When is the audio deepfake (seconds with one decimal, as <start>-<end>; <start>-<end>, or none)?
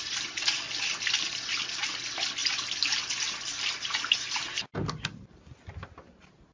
none